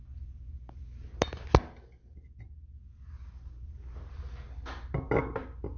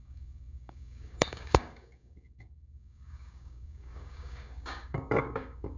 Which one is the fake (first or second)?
second